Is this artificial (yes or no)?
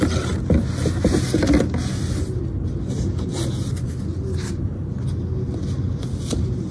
no